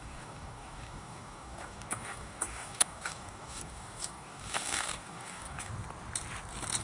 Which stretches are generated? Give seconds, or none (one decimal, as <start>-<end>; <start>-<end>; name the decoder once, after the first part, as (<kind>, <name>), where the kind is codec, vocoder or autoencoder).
0.0-5.7 (codec, DAC)